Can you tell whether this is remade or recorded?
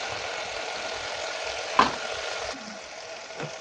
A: recorded